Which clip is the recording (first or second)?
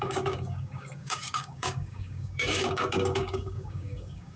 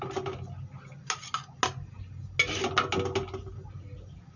second